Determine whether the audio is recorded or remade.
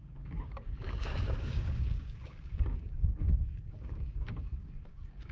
remade